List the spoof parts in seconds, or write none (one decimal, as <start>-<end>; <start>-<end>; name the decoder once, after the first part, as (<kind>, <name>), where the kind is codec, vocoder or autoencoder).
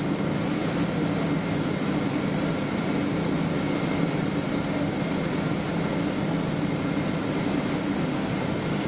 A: none